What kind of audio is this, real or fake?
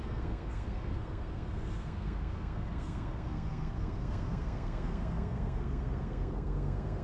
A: fake